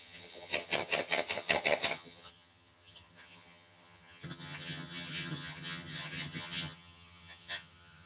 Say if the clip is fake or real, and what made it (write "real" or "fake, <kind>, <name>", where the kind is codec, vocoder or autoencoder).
fake, vocoder, HiFi-GAN